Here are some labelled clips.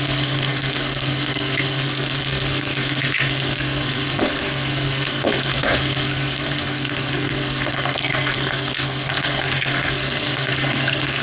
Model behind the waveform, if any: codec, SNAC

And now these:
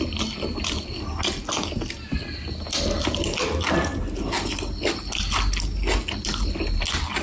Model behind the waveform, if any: none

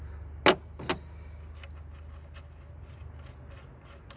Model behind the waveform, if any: none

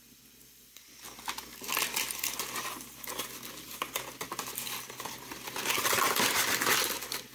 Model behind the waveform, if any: none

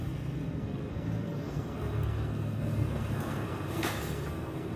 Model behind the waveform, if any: codec, SNAC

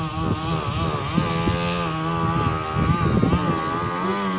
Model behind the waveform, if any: none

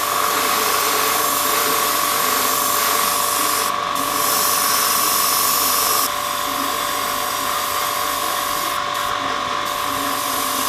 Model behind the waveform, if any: none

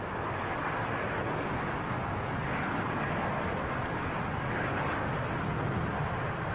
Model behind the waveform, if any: none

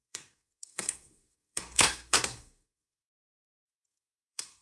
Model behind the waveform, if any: codec, SNAC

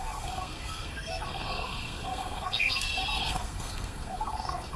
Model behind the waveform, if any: codec, SNAC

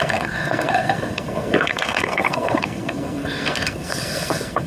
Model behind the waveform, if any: codec, SNAC